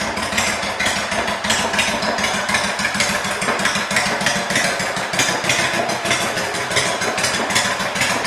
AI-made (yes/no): no